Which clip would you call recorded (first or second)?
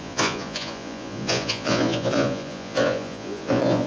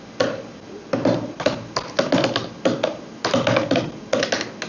second